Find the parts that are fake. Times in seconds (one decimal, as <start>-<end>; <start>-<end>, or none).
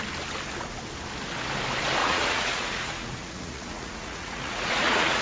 2.0-5.2